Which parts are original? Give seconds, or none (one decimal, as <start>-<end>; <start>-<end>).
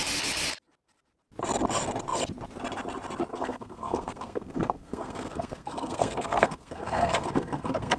0.0-3.3